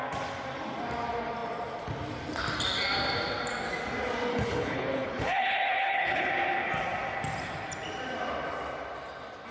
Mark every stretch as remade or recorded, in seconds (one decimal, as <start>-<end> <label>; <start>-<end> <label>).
0.0-4.3 recorded; 4.3-6.3 remade; 6.3-9.5 recorded